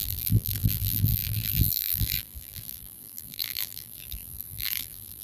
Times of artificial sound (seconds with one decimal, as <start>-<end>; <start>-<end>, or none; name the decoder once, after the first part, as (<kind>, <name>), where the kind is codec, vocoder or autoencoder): 0.0-5.2 (vocoder, BigVGAN v2)